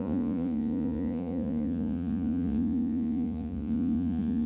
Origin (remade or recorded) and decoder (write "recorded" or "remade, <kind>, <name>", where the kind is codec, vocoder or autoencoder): remade, vocoder, Vocos